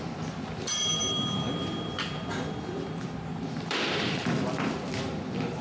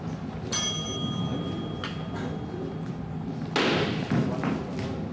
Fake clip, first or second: first